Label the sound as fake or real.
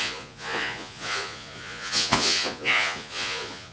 fake